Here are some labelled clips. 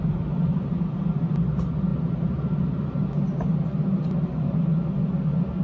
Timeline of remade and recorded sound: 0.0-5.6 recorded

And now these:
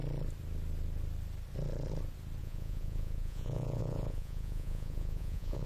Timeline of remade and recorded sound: 0.0-2.4 recorded; 2.4-5.7 remade

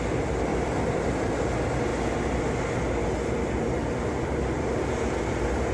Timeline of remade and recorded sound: 0.0-0.5 recorded; 0.5-1.3 remade; 1.3-5.7 recorded

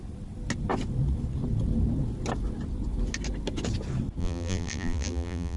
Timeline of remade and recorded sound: 0.0-4.2 recorded; 4.2-5.6 remade

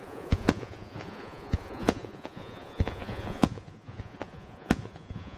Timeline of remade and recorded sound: 0.0-5.4 remade

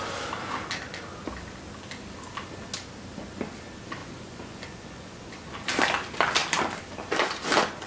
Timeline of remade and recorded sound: 0.0-4.0 recorded; 4.0-5.5 remade; 5.5-7.9 recorded

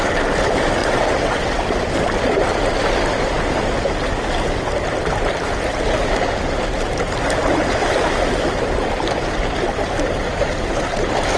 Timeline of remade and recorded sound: 0.0-0.8 recorded; 0.8-1.6 remade; 1.6-11.4 recorded